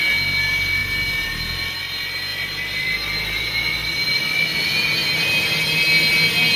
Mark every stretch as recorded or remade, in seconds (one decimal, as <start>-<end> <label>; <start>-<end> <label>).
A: 0.0-2.3 recorded; 2.3-5.8 remade; 5.8-6.6 recorded